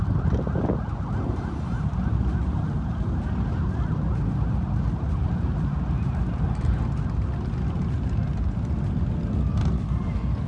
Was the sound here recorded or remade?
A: recorded